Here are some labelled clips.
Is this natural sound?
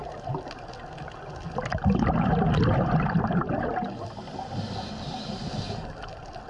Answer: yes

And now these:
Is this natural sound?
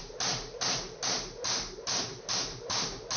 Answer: yes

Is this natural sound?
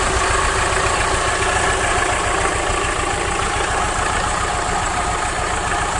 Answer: yes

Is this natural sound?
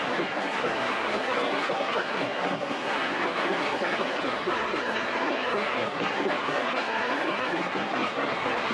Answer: no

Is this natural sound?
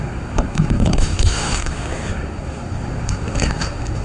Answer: no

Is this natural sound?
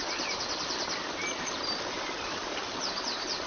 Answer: yes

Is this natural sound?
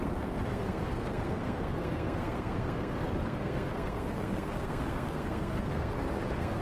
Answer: no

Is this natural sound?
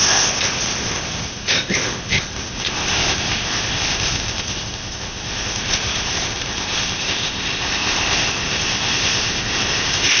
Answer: no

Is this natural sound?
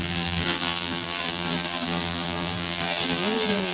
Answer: no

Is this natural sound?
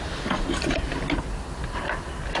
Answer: yes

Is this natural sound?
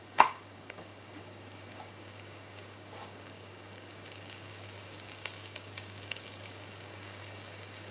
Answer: no